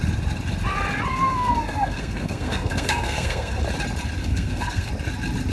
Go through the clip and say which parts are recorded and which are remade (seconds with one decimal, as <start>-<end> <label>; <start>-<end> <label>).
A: 0.0-1.1 recorded; 1.1-3.6 remade; 3.6-4.2 recorded; 4.2-4.9 remade; 4.9-5.5 recorded